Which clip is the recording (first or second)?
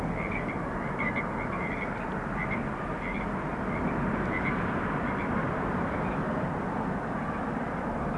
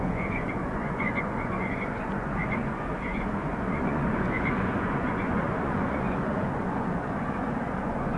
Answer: first